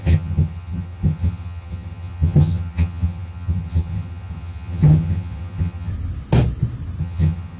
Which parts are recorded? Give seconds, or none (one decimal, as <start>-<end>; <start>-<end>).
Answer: 5.9-7.0